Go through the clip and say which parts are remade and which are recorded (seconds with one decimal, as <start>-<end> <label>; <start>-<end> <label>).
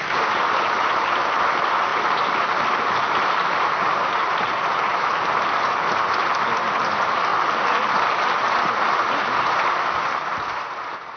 0.0-7.3 remade; 7.3-10.0 recorded; 10.0-11.2 remade